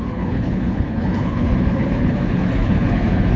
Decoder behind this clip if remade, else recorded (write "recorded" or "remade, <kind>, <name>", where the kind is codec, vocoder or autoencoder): remade, codec, HILCodec